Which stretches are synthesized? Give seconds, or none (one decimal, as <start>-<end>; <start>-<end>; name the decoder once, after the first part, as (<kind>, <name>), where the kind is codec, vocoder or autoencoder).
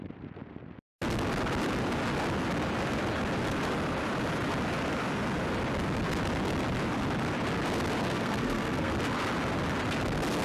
8.0-8.9 (codec, SNAC)